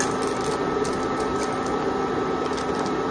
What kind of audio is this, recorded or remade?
recorded